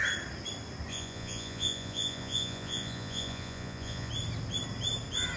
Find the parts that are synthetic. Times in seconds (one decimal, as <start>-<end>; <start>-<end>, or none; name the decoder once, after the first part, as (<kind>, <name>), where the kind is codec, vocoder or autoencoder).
0.9-4.1 (vocoder, Vocos)